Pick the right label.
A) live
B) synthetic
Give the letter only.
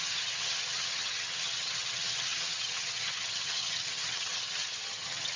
B